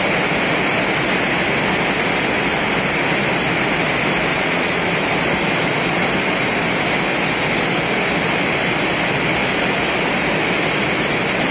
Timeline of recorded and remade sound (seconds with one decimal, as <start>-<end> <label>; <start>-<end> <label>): 0.0-4.3 recorded; 4.3-4.9 remade; 4.9-11.5 recorded